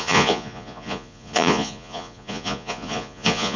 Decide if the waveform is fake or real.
fake